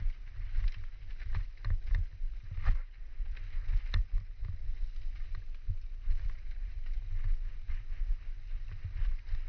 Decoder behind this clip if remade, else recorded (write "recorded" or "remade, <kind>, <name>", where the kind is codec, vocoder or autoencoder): recorded